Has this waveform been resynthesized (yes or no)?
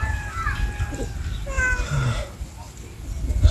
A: no